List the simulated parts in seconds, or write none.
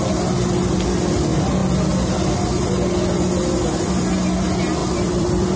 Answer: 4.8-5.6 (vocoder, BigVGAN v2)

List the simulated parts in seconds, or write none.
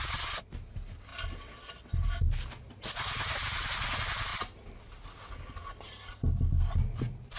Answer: none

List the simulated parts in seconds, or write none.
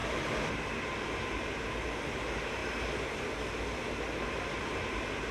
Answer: 1.6-5.3 (vocoder, BigVGAN v2)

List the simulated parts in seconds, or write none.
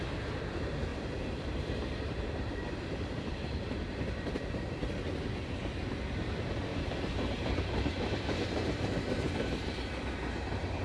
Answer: 0.9-4.9 (vocoder, BigVGAN v2); 6.7-9.7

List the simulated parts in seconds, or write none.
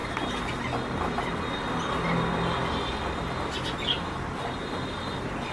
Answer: none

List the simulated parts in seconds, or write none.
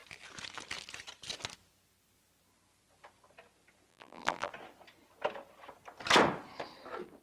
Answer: 3.9-4.5 (vocoder, BigVGAN v2)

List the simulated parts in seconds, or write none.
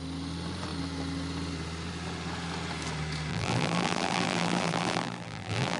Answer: 3.3-5.8 (vocoder, BigVGAN v2)